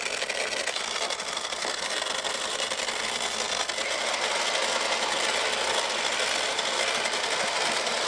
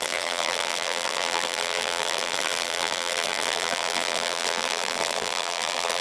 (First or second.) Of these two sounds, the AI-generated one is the second